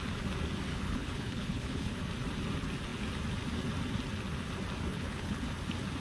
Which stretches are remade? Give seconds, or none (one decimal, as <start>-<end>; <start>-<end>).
0.7-1.9; 4.9-5.5